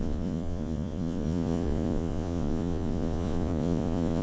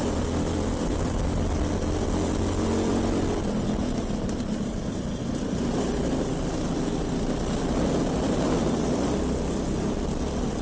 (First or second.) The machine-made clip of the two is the first